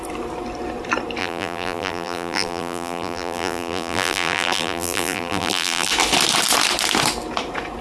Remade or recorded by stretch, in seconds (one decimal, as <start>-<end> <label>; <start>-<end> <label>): 0.0-1.2 recorded; 1.2-5.9 remade; 5.9-7.8 recorded